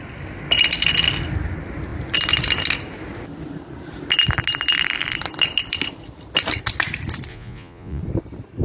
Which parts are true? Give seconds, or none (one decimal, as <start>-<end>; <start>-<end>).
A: 0.0-7.3; 8.0-8.6